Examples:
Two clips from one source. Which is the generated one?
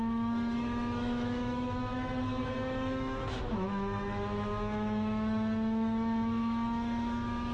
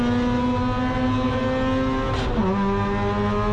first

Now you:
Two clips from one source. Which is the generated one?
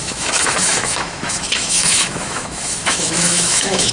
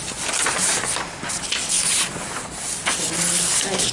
first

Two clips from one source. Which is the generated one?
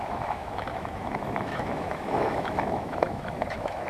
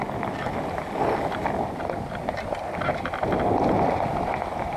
first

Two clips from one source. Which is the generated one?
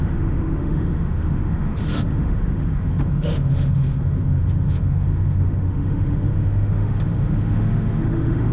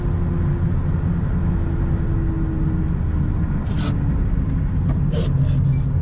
first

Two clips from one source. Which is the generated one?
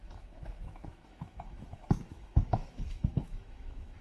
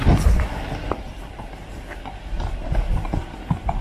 first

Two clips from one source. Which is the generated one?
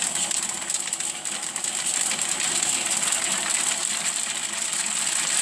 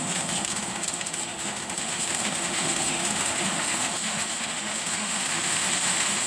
second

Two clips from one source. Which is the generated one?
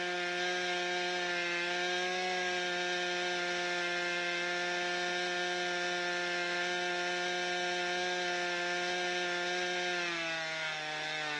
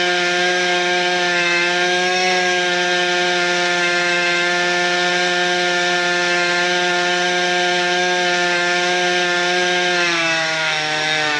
second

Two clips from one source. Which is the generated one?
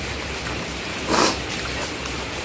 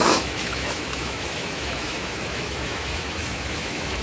second